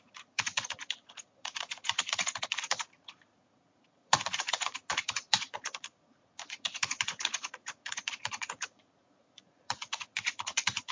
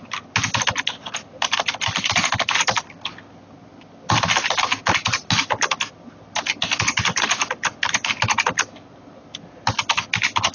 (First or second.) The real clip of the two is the second